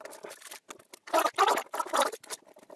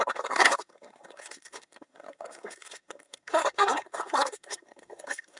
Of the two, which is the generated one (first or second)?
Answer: second